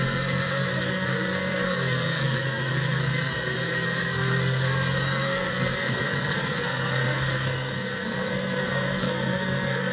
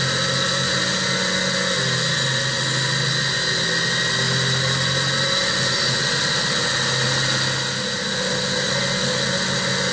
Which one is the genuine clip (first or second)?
second